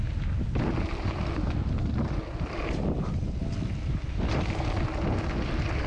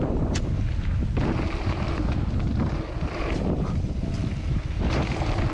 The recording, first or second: first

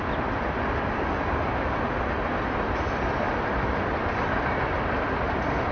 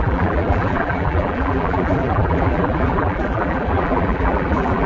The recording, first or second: first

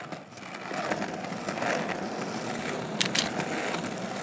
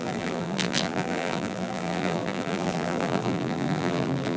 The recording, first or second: first